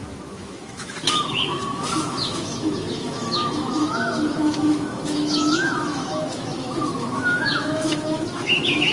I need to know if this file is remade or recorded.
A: remade